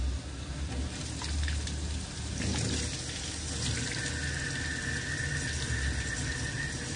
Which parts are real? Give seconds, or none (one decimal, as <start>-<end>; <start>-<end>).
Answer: 0.0-7.0